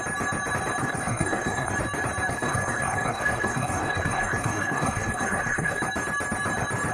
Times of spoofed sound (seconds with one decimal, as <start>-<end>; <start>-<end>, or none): 0.8-1.7; 2.3-5.8